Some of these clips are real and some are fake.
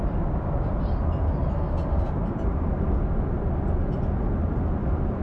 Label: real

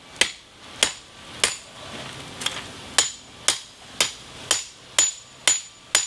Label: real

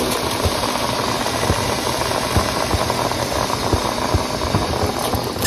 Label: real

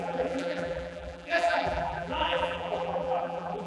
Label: fake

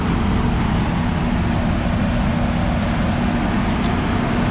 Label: real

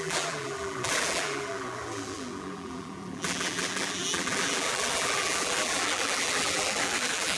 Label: fake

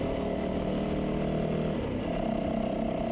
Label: real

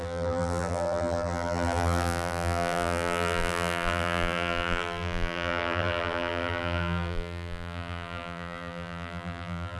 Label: fake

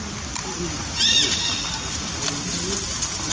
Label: fake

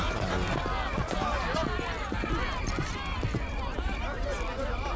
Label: real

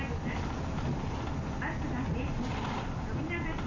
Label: real